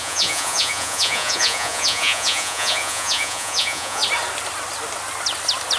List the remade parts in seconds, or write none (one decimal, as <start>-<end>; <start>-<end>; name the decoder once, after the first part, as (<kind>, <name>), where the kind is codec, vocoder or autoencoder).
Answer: 0.0-4.0 (vocoder, Vocos)